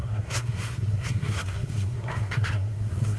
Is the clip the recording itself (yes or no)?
no